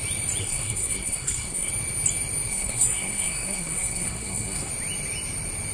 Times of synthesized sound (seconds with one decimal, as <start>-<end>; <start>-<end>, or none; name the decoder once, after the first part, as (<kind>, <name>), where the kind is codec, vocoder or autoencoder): 0.4-1.7 (codec, SNAC); 2.5-4.7